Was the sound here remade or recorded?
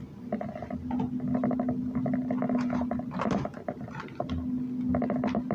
recorded